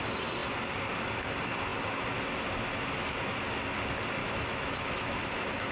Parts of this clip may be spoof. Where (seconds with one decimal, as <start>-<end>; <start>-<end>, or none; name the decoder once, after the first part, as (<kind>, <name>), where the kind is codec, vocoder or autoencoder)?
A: 4.2-5.7 (autoencoder, DAC-VAE)